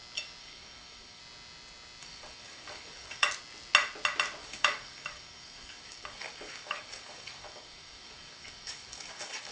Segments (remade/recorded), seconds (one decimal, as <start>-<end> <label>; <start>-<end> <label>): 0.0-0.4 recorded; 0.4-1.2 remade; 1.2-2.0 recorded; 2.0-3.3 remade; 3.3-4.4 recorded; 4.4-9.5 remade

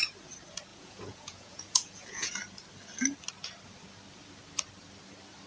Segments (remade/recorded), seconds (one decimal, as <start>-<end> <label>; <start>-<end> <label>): 0.0-0.7 recorded; 0.7-2.3 remade; 2.3-5.5 recorded

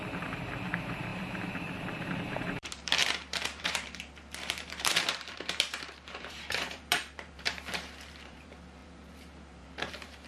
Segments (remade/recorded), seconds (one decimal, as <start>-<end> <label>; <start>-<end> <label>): 0.0-3.0 remade; 3.0-3.6 recorded; 3.6-10.3 remade